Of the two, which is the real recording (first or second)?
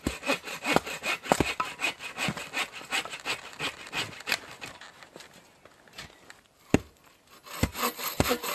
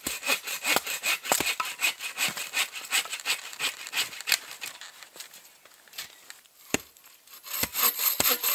first